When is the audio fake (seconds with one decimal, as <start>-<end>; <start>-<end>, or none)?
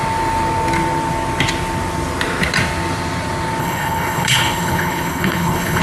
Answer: 3.6-5.8